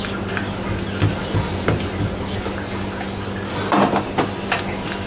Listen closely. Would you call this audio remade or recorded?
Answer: recorded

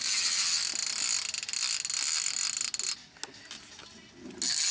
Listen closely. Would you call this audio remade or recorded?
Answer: recorded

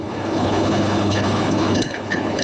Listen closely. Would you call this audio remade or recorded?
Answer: remade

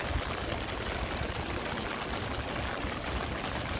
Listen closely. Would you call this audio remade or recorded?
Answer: recorded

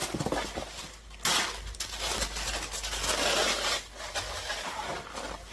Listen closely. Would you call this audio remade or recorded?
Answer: recorded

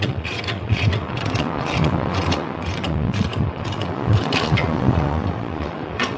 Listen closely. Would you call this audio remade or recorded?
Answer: remade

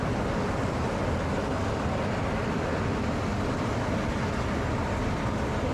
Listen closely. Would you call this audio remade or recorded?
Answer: recorded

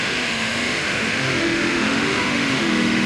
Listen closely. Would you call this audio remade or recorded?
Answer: remade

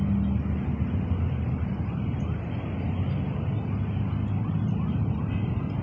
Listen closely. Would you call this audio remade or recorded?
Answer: recorded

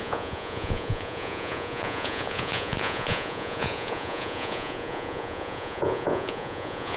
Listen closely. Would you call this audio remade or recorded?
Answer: remade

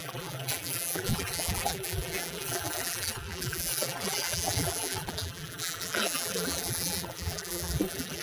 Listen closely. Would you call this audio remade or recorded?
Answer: remade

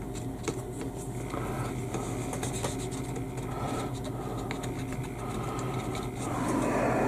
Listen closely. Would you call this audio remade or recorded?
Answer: recorded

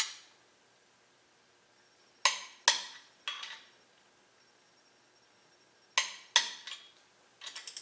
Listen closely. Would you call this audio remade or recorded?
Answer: recorded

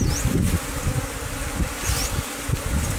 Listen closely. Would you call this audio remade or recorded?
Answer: recorded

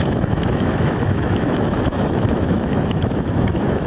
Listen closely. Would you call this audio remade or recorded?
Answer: remade